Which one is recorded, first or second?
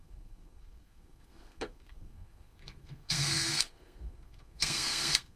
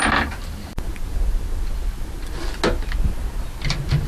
second